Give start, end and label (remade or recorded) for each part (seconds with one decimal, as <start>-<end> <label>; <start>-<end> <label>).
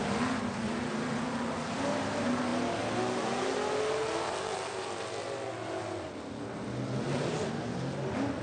0.0-8.4 recorded